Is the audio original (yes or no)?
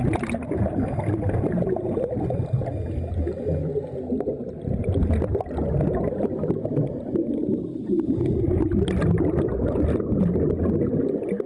yes